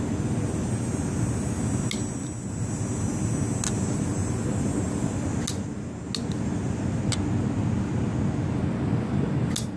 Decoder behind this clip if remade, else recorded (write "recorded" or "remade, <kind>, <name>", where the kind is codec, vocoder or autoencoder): recorded